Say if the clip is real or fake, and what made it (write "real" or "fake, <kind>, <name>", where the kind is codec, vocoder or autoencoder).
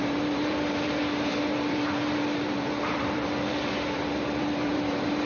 fake, vocoder, BigVGAN v2